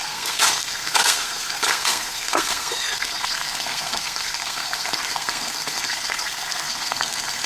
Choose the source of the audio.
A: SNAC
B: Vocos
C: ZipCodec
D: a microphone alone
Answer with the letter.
A